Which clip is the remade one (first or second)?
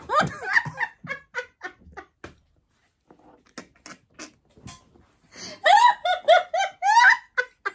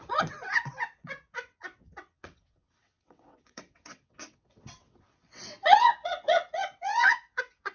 second